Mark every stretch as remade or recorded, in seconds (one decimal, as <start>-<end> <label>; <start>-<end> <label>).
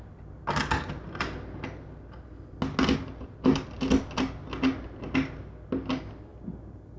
0.0-7.0 recorded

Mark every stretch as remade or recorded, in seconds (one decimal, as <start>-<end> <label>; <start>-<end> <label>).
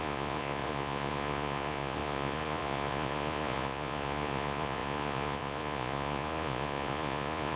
0.0-7.6 remade